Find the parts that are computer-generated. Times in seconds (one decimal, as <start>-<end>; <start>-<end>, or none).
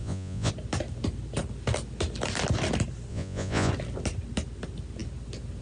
0.0-0.5; 3.1-3.7